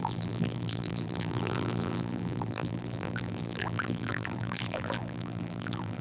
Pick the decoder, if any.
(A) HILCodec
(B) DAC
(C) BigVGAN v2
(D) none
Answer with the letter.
C